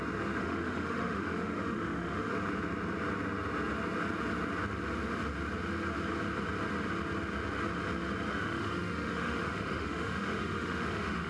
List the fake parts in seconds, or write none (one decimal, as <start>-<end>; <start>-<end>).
0.4-2.3; 8.3-11.3